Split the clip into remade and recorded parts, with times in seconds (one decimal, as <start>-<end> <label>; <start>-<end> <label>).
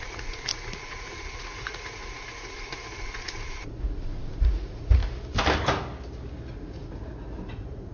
0.0-5.0 remade; 5.0-6.5 recorded; 6.5-7.9 remade